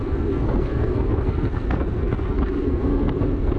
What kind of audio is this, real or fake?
fake